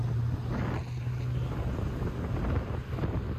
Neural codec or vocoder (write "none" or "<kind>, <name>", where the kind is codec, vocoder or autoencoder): none